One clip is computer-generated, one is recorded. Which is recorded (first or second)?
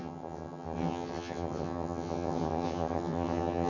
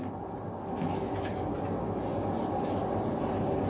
second